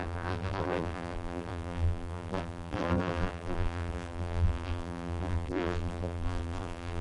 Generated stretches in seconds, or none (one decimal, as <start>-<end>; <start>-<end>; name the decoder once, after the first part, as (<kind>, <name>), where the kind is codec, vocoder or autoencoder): 0.0-7.0 (vocoder, BigVGAN v2)